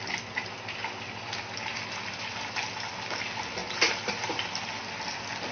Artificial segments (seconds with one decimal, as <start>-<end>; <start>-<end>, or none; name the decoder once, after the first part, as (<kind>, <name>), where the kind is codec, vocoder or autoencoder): none